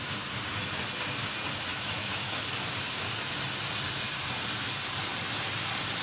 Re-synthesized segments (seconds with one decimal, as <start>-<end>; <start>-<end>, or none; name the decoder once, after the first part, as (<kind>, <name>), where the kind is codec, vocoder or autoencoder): 1.7-2.4 (autoencoder, DAC-VAE)